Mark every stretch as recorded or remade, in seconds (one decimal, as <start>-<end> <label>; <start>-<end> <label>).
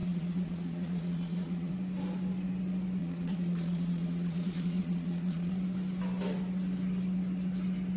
0.0-1.7 remade; 1.7-3.0 recorded; 3.0-5.5 remade; 5.5-8.0 recorded